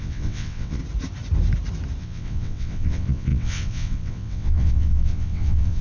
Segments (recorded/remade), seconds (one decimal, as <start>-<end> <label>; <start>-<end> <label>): 0.0-0.8 remade; 0.8-2.0 recorded; 2.0-5.8 remade